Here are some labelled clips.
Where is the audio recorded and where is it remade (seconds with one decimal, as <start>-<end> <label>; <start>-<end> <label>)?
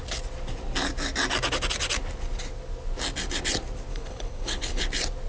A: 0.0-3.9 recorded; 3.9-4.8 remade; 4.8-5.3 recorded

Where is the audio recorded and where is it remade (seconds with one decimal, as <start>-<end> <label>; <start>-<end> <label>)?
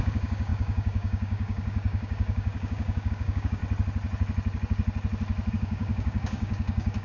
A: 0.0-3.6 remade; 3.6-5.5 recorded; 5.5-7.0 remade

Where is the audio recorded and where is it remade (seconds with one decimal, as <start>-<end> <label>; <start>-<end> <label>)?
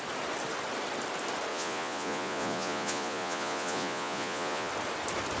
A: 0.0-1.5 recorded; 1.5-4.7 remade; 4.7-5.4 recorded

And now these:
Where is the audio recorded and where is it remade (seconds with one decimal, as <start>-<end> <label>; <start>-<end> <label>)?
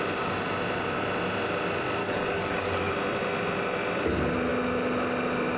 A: 0.0-2.0 recorded; 2.0-2.9 remade; 2.9-5.6 recorded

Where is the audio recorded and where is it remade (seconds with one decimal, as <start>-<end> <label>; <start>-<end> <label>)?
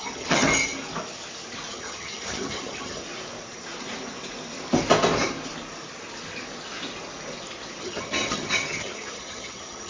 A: 0.0-0.5 remade; 0.5-1.7 recorded; 1.7-3.0 remade; 3.0-7.8 recorded; 7.8-9.9 remade